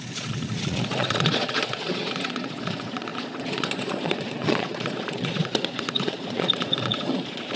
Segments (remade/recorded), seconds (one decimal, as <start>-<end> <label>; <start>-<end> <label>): 0.0-7.6 remade